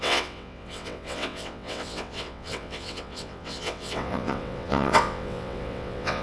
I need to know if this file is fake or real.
fake